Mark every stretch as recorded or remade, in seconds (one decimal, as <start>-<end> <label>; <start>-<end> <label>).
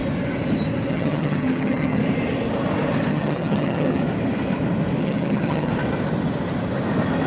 0.0-0.9 recorded; 0.9-2.0 remade; 2.0-3.1 recorded; 3.1-4.0 remade; 4.0-5.0 recorded; 5.0-5.7 remade; 5.7-7.3 recorded